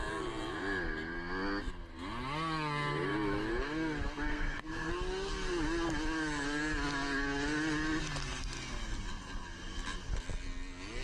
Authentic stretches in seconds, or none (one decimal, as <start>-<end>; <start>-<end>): 0.0-4.3; 4.9-11.0